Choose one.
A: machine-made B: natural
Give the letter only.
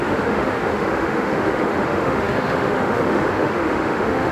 A